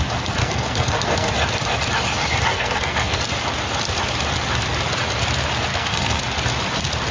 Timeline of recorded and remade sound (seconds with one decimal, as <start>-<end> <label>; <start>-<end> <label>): 0.0-0.4 recorded; 0.4-1.3 remade; 1.3-2.5 recorded; 2.5-3.2 remade; 3.2-5.7 recorded; 5.7-6.2 remade; 6.2-7.1 recorded